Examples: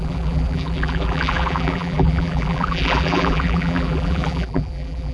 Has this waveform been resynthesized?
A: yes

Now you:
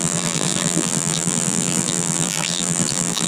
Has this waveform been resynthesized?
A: yes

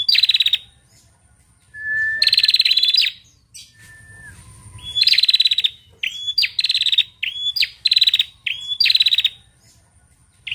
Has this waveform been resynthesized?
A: no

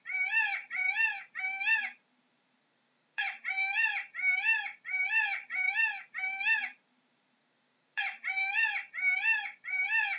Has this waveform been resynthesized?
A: yes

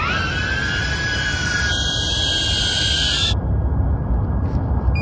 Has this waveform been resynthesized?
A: yes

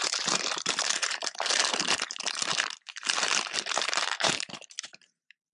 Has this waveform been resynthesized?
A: yes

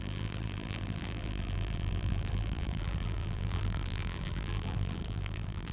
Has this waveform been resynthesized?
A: yes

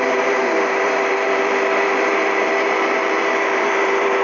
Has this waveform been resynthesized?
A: yes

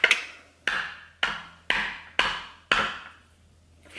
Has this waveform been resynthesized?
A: no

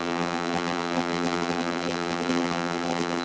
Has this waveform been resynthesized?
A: yes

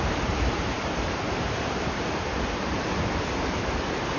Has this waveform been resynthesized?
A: yes